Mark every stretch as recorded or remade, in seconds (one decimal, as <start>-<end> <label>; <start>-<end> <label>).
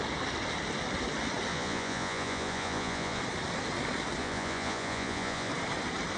0.0-1.5 recorded; 1.5-3.2 remade; 3.2-4.2 recorded; 4.2-5.5 remade; 5.5-6.2 recorded